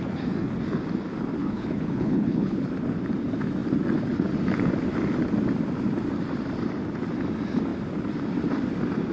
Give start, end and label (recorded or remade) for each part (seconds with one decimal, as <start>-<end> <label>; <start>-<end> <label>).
0.0-1.4 recorded; 1.4-2.7 remade; 2.7-9.1 recorded